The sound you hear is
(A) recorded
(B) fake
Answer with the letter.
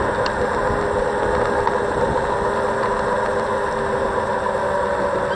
A